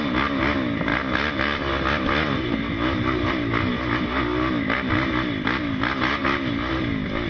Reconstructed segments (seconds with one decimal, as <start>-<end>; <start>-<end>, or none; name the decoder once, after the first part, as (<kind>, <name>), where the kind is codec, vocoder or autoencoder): none